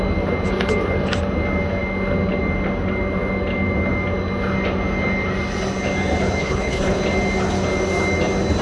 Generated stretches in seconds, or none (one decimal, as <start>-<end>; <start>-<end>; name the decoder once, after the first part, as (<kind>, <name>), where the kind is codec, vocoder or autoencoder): 6.4-7.0 (codec, HILCodec)